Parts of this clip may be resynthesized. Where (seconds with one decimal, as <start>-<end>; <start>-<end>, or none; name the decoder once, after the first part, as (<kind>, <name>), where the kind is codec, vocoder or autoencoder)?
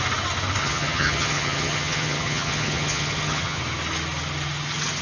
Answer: 0.6-3.6 (vocoder, HiFi-GAN)